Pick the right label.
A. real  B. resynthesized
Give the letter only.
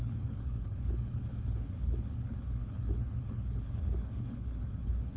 B